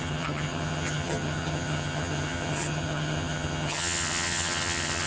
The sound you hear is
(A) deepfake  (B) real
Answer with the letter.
A